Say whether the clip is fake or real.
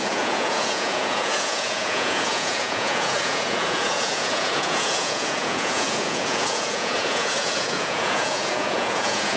fake